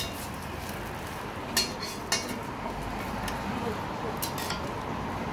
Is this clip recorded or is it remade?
recorded